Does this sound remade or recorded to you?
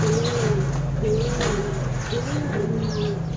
recorded